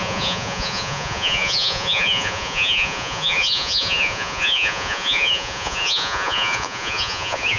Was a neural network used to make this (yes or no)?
yes